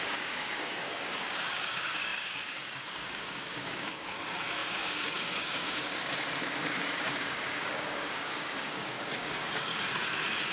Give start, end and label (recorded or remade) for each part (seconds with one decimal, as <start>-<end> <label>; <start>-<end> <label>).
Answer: 0.0-9.7 remade; 9.7-10.5 recorded